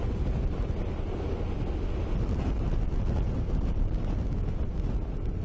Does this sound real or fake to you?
real